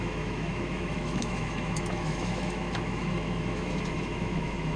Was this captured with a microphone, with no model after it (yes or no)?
no